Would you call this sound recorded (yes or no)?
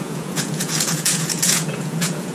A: no